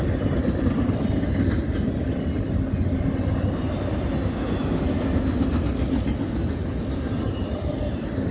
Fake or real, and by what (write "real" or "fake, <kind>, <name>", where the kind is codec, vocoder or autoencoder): real